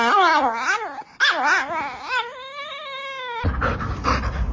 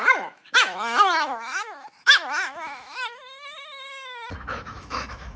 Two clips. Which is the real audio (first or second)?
first